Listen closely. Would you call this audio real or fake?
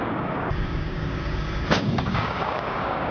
fake